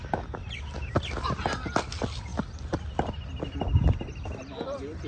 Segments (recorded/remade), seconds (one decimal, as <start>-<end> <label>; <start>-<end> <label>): 0.0-5.1 recorded